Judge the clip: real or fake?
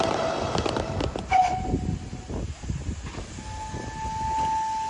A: real